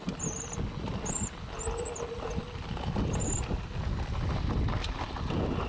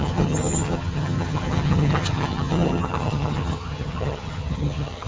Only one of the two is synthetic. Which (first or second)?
second